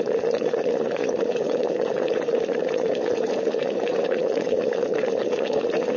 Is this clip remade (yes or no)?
yes